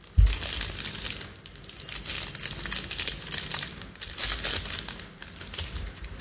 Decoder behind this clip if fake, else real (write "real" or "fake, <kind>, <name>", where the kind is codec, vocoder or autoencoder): real